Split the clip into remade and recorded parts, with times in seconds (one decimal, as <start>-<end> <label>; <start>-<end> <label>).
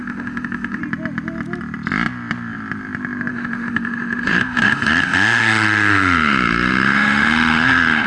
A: 0.0-0.8 remade; 0.8-3.3 recorded; 3.3-8.1 remade